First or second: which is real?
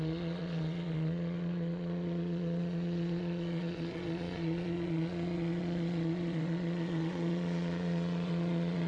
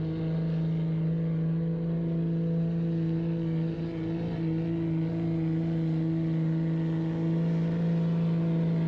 second